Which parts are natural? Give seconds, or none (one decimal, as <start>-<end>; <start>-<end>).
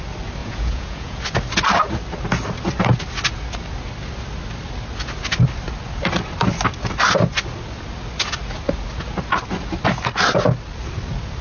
0.0-0.4; 1.2-11.4